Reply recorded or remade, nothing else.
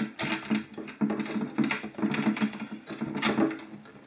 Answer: recorded